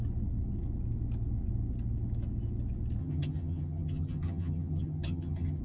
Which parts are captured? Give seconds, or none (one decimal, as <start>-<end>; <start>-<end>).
0.0-3.0